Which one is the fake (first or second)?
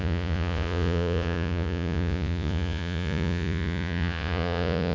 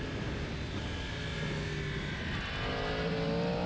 first